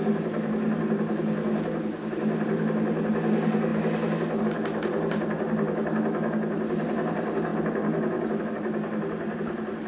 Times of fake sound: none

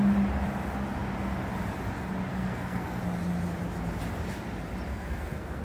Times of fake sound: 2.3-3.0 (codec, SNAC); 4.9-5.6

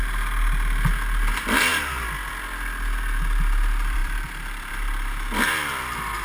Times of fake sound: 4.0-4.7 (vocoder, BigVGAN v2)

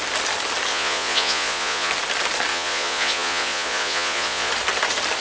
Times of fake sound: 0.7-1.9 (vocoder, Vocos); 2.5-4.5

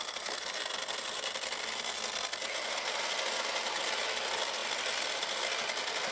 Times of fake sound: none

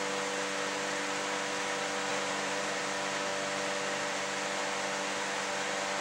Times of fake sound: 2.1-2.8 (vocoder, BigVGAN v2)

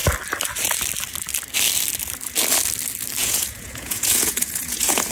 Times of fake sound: 3.2-5.1 (vocoder, Vocos)